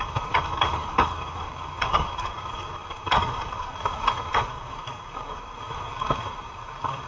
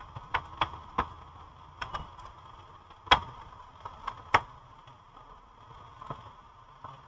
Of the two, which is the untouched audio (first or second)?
second